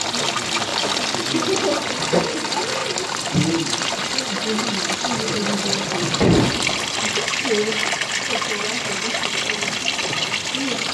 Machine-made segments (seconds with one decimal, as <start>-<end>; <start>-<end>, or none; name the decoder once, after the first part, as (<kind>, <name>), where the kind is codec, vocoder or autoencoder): none